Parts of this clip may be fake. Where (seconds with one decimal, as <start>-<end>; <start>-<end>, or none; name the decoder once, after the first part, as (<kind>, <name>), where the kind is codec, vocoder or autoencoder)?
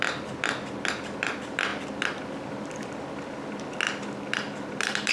none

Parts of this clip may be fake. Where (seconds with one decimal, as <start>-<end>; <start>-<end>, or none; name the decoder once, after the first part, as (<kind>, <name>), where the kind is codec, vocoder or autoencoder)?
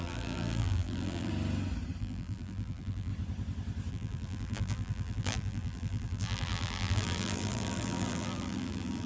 0.0-1.3 (vocoder, BigVGAN v2); 2.0-3.1; 3.9-9.1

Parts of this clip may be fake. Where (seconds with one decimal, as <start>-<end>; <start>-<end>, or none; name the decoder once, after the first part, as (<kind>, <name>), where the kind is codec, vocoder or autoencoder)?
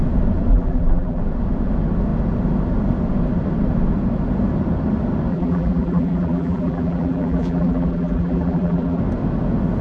0.5-1.2 (vocoder, BigVGAN v2); 5.3-9.0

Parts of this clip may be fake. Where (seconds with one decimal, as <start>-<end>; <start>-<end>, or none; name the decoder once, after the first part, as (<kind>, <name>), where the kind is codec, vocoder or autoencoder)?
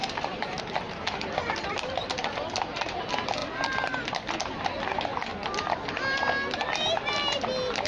0.0-0.6 (vocoder, BigVGAN v2)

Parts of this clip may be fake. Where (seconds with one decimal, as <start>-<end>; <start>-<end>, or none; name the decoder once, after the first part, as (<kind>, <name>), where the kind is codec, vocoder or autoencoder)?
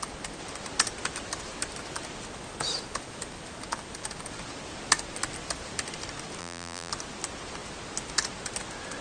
6.4-6.9 (vocoder, BigVGAN v2)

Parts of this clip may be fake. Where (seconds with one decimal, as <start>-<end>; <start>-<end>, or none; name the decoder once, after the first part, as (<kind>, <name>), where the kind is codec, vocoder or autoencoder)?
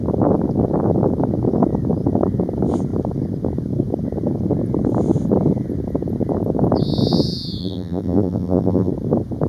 7.6-8.9 (vocoder, BigVGAN v2)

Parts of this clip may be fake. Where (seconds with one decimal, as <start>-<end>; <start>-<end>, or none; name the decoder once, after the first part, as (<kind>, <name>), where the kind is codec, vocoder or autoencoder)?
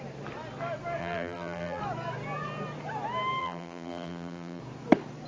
1.0-1.8 (vocoder, BigVGAN v2); 3.4-4.6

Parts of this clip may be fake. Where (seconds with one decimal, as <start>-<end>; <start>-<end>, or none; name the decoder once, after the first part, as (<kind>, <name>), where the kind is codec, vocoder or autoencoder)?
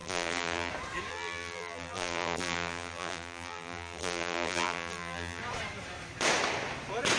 0.0-0.7 (vocoder, BigVGAN v2); 1.1-5.4